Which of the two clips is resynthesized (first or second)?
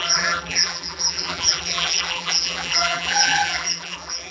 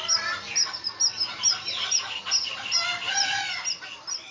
first